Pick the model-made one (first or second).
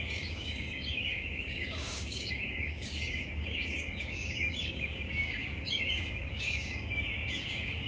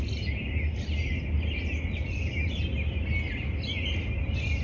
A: first